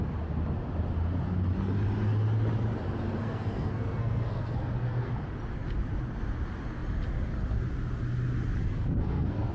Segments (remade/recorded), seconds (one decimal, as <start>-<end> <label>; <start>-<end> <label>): 0.0-3.2 recorded; 3.2-5.1 remade; 5.1-8.7 recorded; 8.7-9.5 remade